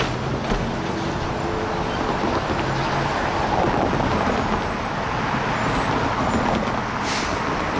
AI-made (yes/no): no